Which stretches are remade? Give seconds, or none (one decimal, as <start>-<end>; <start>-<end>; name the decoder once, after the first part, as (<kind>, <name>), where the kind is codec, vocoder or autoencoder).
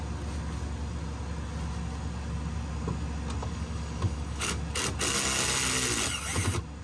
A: 3.4-4.6 (codec, DAC)